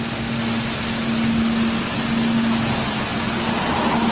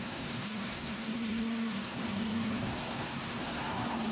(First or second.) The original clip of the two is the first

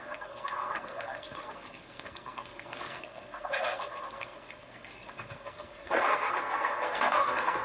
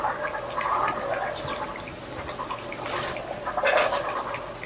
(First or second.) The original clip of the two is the second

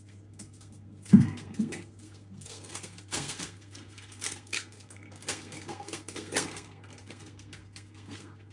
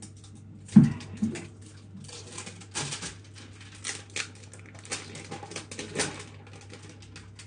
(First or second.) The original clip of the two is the second